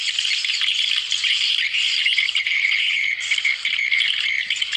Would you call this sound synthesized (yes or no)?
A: yes